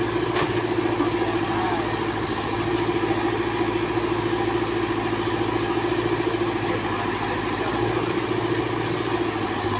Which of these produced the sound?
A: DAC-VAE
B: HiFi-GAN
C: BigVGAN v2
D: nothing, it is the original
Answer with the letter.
D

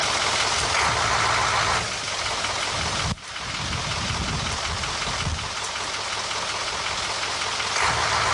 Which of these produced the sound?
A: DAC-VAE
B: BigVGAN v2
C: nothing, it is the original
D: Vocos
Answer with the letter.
C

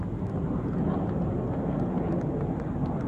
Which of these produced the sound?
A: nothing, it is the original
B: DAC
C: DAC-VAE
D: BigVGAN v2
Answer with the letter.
A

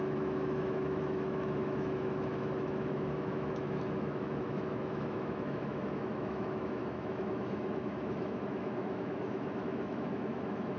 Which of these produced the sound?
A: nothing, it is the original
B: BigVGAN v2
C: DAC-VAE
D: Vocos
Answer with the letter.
C